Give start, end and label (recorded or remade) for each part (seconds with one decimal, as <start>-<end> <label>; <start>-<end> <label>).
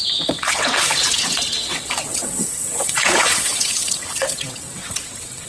0.0-5.5 remade